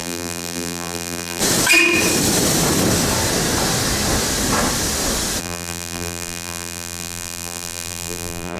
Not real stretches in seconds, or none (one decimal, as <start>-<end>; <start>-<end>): 0.0-1.4; 5.4-8.6

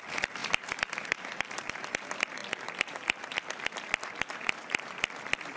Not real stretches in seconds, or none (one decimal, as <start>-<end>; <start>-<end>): 0.4-1.7

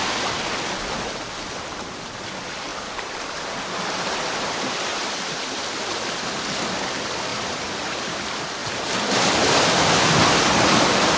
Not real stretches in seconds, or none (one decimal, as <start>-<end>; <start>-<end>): 7.3-8.2

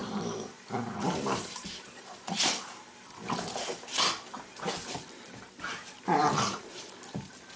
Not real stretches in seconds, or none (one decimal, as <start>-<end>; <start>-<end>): 0.0-4.6; 6.2-6.9

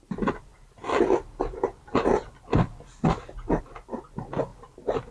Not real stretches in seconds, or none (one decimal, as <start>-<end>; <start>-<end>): 0.0-5.1

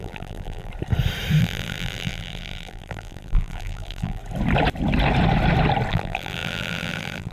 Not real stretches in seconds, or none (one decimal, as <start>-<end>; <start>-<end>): 0.0-0.7; 1.4-4.2; 5.9-7.3